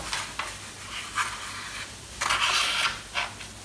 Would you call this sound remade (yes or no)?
no